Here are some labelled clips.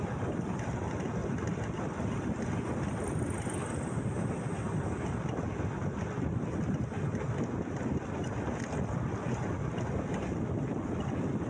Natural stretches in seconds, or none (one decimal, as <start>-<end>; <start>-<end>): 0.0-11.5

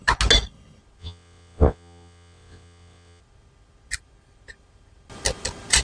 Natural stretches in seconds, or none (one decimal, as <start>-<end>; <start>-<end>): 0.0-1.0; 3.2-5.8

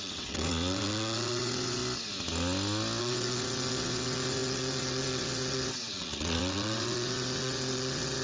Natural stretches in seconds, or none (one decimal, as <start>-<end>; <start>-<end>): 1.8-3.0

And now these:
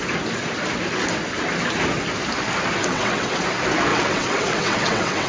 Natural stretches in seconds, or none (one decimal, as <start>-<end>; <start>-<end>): 0.0-2.8; 3.4-3.9

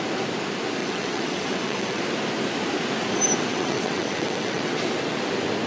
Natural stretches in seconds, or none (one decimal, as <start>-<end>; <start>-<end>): 0.0-0.8; 2.0-3.5; 4.8-5.7

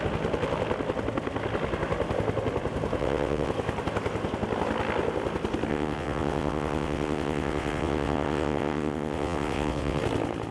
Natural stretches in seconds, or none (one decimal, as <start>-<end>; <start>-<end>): 0.0-3.0; 3.5-5.7; 10.0-10.5